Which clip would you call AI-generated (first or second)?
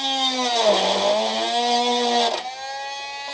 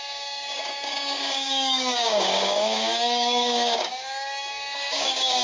second